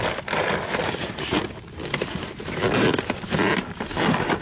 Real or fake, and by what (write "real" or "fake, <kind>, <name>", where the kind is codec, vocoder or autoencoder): real